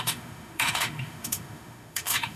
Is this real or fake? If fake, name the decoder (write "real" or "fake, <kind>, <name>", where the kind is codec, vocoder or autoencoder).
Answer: fake, autoencoder, DAC-VAE